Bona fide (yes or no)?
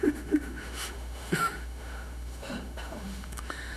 no